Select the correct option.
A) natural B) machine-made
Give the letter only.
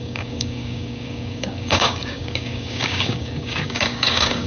B